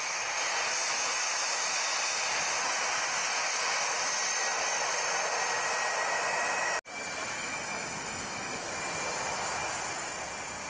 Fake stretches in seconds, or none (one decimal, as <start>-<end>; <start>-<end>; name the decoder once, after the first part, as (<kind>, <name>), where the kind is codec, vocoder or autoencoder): 7.4-8.7 (autoencoder, DAC-VAE)